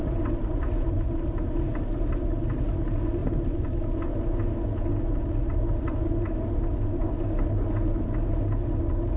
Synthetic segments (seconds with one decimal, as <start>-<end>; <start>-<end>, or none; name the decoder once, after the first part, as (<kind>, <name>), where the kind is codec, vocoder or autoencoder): none